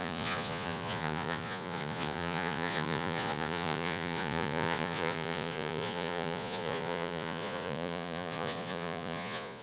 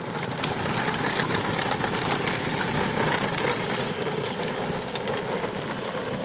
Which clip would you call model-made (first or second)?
first